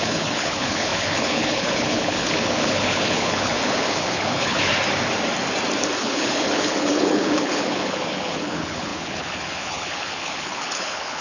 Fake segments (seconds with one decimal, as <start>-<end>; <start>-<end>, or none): 0.0-4.7; 6.0-11.2